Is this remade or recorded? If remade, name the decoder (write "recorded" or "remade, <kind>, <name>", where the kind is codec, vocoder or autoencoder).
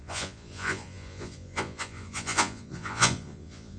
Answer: remade, vocoder, Vocos